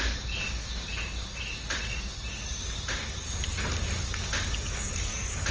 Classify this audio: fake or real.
real